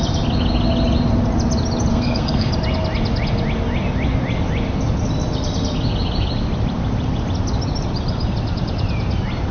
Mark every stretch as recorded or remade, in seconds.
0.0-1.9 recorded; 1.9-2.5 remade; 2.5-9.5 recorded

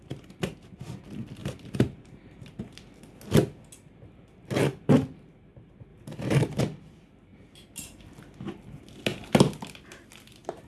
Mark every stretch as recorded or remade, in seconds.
0.0-1.4 recorded; 1.4-2.6 remade; 2.6-5.9 recorded; 5.9-6.6 remade; 6.6-7.3 recorded; 7.3-8.0 remade; 8.0-10.7 recorded

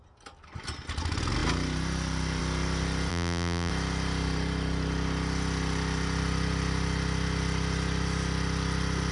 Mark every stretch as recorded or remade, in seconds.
0.0-3.1 recorded; 3.1-3.7 remade; 3.7-9.1 recorded

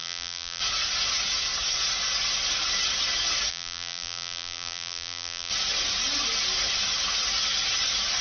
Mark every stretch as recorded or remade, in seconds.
0.0-0.6 remade; 0.6-3.5 recorded; 3.5-5.5 remade; 5.5-8.2 recorded

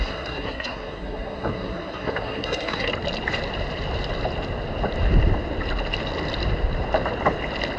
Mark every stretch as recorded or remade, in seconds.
0.0-2.9 remade; 2.9-7.8 recorded

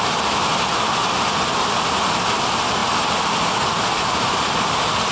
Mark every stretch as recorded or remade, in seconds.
0.0-5.1 recorded